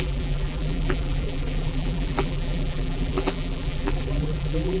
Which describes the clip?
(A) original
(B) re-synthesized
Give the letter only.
B